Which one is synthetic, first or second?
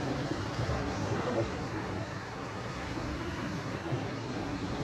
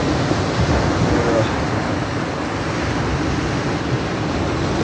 first